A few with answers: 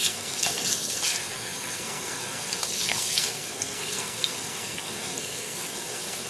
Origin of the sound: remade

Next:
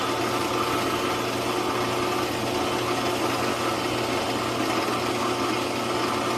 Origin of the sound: recorded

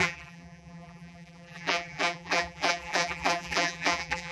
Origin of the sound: remade